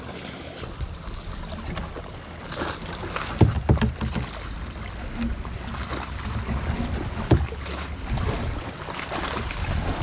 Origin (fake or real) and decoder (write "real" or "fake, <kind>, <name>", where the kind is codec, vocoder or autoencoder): real